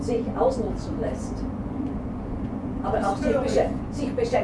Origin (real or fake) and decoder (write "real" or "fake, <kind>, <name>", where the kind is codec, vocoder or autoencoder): fake, vocoder, Vocos